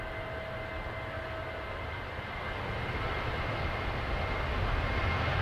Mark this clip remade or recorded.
recorded